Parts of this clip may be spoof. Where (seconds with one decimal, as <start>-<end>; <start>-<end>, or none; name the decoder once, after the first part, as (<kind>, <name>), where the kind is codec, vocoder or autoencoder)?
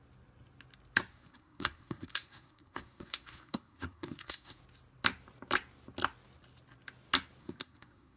1.1-4.6 (codec, SNAC); 7.4-8.2